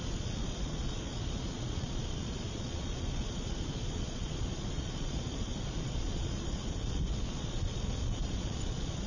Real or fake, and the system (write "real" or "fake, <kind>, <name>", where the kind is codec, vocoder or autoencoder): fake, vocoder, Vocos